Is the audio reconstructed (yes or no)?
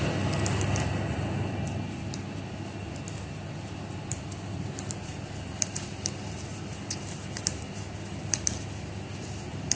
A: no